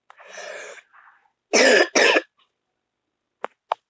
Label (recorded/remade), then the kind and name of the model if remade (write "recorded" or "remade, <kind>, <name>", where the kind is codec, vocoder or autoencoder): recorded